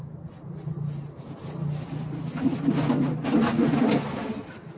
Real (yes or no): yes